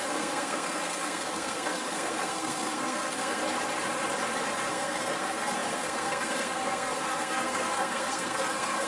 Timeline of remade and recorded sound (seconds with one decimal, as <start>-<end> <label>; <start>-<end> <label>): 0.0-3.4 remade; 3.4-4.7 recorded; 4.7-8.9 remade